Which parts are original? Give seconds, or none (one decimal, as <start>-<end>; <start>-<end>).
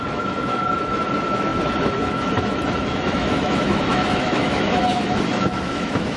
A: none